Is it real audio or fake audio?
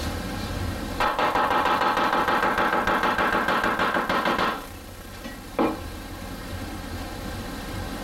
real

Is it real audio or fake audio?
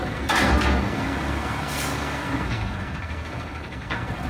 fake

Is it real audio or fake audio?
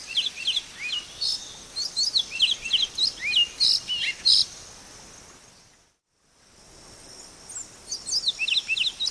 real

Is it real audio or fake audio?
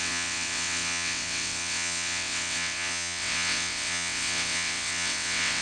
fake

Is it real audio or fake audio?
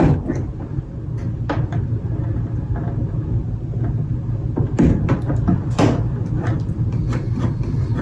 real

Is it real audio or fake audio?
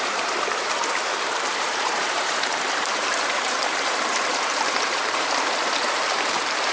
fake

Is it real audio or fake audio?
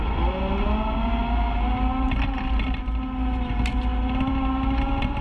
real